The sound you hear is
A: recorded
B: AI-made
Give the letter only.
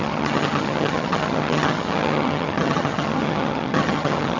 B